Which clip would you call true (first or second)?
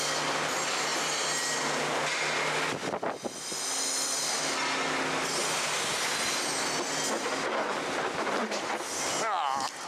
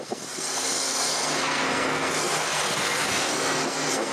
first